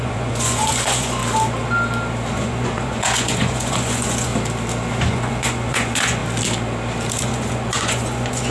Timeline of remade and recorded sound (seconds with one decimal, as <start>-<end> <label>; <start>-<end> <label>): 0.0-1.2 remade; 1.2-2.3 recorded; 2.3-4.3 remade; 4.3-5.0 recorded; 5.0-6.2 remade; 6.2-7.2 recorded; 7.2-8.5 remade